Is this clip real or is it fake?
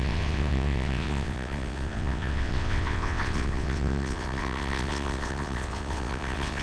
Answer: fake